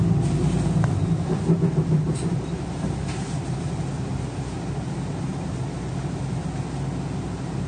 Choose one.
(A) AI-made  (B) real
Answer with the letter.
B